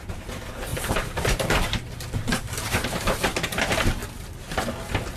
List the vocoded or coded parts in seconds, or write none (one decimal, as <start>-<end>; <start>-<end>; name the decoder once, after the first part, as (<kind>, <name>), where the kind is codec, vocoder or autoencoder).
0.0-4.0 (vocoder, BigVGAN v2)